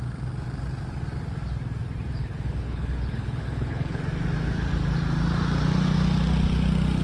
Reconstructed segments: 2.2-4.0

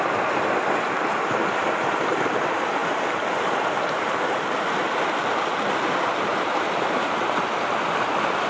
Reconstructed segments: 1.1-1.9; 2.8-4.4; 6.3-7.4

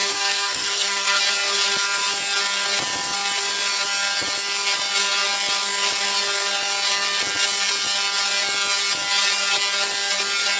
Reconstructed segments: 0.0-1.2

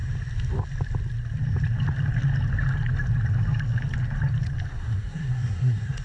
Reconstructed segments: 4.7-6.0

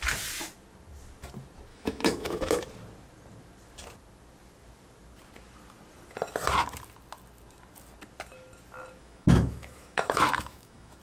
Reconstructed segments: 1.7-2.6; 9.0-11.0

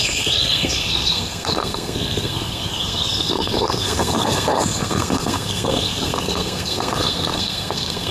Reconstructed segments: 0.0-8.1